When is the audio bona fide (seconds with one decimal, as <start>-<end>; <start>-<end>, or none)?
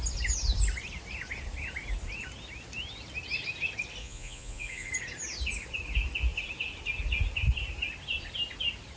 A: 0.0-4.0; 4.9-9.0